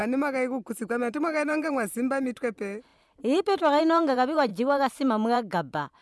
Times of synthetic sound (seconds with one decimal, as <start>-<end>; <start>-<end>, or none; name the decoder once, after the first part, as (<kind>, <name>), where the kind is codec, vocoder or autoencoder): 1.1-6.0 (vocoder, BigVGAN v2)